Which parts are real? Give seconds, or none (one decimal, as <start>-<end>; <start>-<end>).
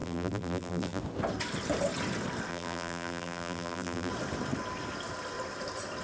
1.0-2.5; 4.1-6.0